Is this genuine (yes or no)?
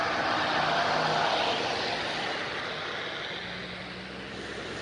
yes